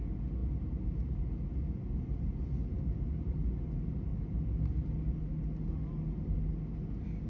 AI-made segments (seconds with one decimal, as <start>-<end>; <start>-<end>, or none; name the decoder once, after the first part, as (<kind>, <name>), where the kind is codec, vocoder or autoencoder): none